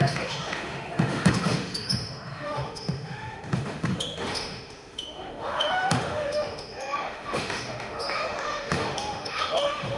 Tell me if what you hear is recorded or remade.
remade